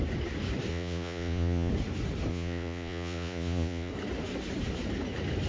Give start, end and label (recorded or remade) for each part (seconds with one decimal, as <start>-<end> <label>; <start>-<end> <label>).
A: 0.0-0.7 recorded; 0.7-1.7 remade; 1.7-2.3 recorded; 2.3-3.9 remade; 3.9-5.5 recorded